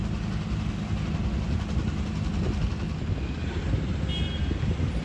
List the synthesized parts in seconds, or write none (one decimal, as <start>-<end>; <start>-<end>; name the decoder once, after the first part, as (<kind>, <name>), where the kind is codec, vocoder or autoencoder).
none